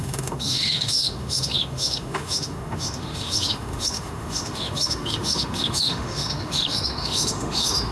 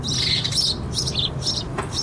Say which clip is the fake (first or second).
first